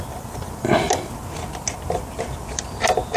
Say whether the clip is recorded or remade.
recorded